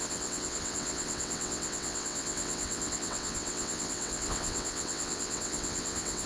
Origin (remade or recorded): remade